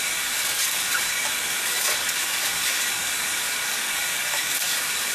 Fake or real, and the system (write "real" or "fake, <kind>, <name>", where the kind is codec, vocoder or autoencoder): fake, codec, DAC